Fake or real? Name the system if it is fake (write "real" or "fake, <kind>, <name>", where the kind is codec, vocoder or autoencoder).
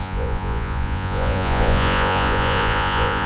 fake, vocoder, Vocos